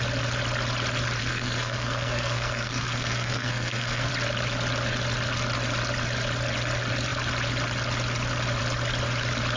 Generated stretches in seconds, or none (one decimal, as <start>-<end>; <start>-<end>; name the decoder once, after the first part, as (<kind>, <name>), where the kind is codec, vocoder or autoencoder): 1.2-4.1 (codec, SNAC)